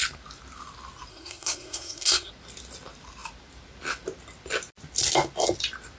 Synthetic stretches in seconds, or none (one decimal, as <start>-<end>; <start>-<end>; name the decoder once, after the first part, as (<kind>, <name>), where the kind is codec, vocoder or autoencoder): 1.1-2.3 (codec, SNAC)